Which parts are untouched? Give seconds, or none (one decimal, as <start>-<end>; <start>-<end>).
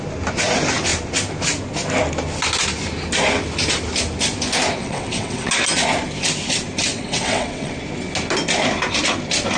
0.0-4.8; 5.5-6.9; 7.8-9.6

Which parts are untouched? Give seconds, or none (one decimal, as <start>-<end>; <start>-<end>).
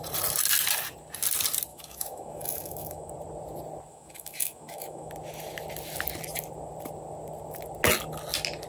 0.0-1.7; 3.1-3.9; 5.1-8.7